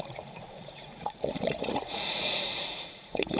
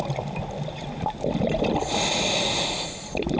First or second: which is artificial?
first